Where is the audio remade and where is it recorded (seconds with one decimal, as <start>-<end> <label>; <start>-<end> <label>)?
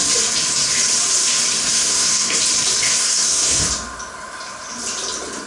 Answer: 0.0-1.6 recorded; 1.6-2.4 remade; 2.4-2.9 recorded; 2.9-3.6 remade; 3.6-5.5 recorded